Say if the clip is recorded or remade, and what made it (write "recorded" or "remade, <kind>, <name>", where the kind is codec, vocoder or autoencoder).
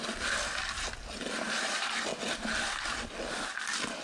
recorded